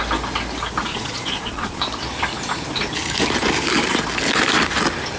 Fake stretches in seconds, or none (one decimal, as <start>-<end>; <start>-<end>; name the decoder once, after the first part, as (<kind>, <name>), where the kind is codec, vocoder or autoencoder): 0.9-1.9 (vocoder, Vocos)